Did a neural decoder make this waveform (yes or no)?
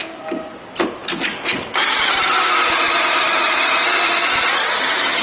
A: no